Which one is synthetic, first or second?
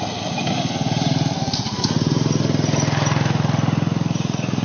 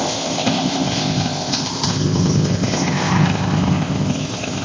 second